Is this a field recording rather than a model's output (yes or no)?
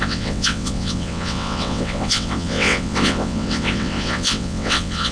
no